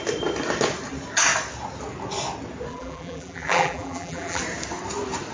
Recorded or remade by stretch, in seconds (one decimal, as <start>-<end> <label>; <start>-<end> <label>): 0.0-2.7 recorded; 2.7-4.4 remade; 4.4-5.3 recorded